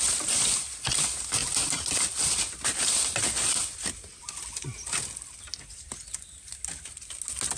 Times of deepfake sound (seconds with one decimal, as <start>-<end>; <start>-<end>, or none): none